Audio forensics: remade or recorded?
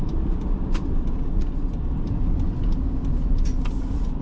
remade